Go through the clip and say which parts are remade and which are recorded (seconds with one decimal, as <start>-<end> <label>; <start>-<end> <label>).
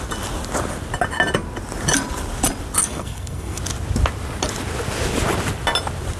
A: 0.0-2.8 recorded; 2.8-3.6 remade; 3.6-6.2 recorded